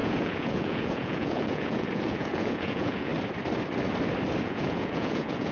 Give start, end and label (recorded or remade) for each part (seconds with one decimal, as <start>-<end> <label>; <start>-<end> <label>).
0.0-3.1 remade; 3.1-4.4 recorded; 4.4-5.5 remade